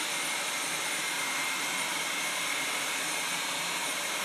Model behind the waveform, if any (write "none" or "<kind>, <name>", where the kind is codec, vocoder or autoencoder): vocoder, BigVGAN v2